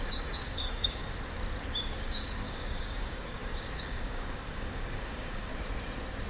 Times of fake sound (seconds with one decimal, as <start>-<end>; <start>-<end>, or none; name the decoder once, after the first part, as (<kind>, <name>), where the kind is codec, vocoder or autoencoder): 0.0-1.0 (codec, DAC); 1.8-5.5